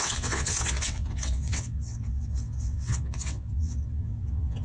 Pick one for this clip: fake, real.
fake